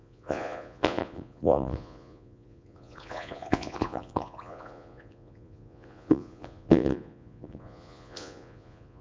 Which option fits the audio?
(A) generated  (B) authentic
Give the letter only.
A